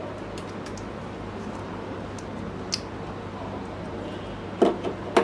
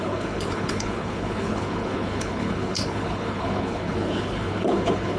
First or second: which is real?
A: first